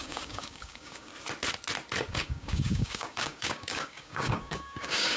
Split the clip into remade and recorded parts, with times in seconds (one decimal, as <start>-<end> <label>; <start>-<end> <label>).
0.0-1.1 remade; 1.1-2.1 recorded; 2.1-5.2 remade